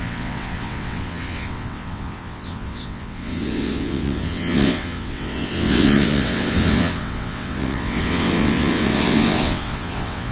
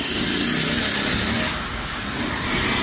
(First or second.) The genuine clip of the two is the second